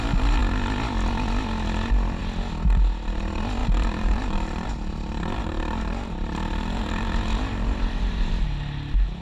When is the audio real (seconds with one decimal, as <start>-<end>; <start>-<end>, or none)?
0.0-3.6; 8.3-9.2